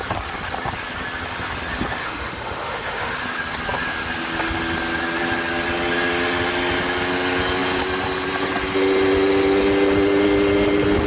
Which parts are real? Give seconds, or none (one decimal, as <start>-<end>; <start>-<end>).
0.0-2.0; 3.2-11.1